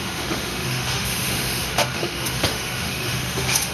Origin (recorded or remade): remade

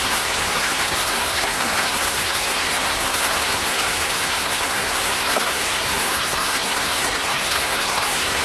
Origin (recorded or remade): remade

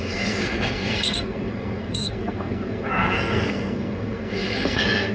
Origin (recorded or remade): remade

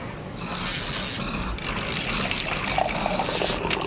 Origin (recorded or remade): recorded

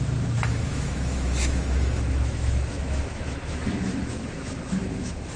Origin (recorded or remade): remade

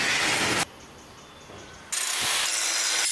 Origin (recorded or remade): recorded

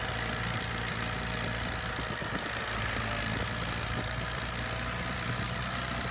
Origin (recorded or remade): remade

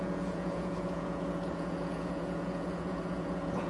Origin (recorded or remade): remade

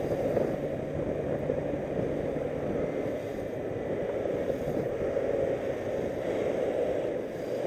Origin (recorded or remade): recorded